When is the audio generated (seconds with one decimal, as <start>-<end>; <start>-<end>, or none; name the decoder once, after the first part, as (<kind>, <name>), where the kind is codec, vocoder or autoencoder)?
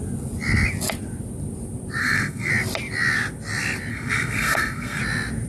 2.0-2.5 (codec, SNAC); 3.9-5.0